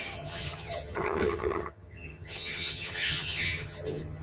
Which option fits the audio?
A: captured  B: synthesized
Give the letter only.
B